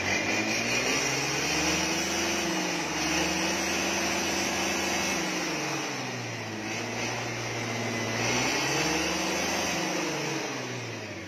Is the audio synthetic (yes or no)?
no